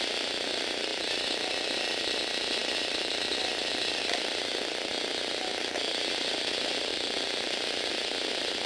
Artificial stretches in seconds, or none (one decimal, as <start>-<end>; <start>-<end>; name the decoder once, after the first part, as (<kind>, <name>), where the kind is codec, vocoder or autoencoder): 2.6-4.9 (vocoder, BigVGAN v2); 6.9-7.9